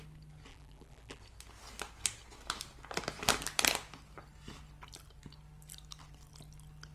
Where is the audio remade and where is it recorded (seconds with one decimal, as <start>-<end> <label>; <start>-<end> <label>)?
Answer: 0.0-0.5 recorded; 0.5-1.2 remade; 1.2-6.9 recorded

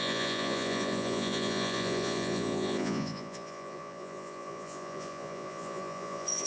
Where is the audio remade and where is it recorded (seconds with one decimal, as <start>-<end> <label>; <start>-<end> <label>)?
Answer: 0.0-6.5 remade